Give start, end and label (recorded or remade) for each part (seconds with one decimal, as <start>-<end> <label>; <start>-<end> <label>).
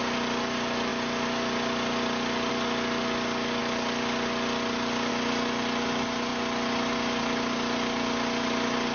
0.0-8.9 recorded